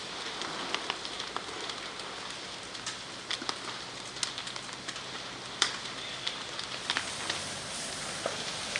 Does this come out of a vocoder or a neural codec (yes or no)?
no